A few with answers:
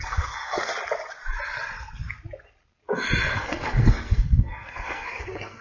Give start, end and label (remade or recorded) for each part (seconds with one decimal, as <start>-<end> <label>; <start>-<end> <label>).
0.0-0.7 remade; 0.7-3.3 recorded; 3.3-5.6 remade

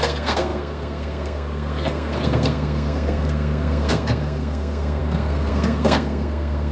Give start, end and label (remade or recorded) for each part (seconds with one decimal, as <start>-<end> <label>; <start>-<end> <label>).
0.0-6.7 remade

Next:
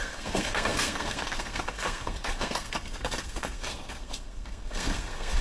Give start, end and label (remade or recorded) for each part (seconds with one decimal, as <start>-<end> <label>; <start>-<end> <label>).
0.0-5.4 remade

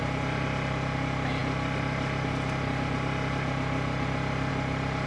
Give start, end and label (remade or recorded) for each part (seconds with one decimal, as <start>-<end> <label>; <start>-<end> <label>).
0.0-5.1 recorded

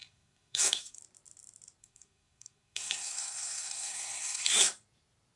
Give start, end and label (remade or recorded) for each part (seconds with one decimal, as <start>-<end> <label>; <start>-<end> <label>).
0.0-1.0 remade; 1.0-1.8 recorded; 1.8-4.7 remade; 4.7-5.4 recorded

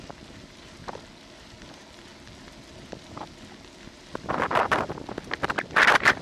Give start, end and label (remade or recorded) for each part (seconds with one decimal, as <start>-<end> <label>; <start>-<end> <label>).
0.0-6.2 recorded